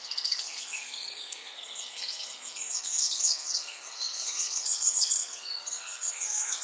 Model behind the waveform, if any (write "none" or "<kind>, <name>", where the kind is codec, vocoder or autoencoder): codec, SNAC